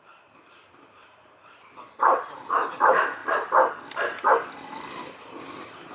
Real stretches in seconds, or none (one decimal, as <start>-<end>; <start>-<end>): 3.2-5.5